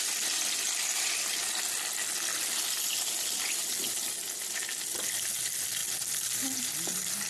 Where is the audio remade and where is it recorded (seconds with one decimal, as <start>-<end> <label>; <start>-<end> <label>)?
0.0-5.8 recorded; 5.8-6.7 remade; 6.7-7.3 recorded

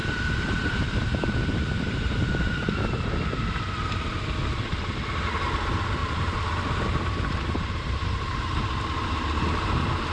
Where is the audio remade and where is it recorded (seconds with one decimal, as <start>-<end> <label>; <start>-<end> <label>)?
0.0-2.8 remade; 2.8-6.0 recorded; 6.0-8.4 remade; 8.4-10.1 recorded

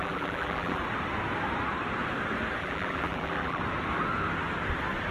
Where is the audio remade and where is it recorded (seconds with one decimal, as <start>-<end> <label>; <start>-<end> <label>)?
0.0-0.8 remade; 0.8-2.6 recorded; 2.6-3.6 remade; 3.6-5.1 recorded